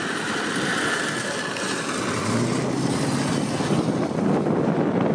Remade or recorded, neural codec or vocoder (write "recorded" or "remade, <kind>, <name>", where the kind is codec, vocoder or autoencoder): recorded